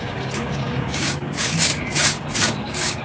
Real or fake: fake